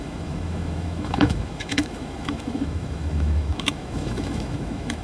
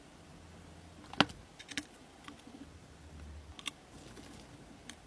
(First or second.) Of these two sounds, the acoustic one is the second